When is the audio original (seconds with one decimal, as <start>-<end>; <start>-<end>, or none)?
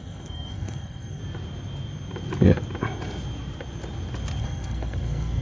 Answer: 1.2-4.4